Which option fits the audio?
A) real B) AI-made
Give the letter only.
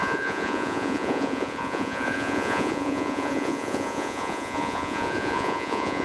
B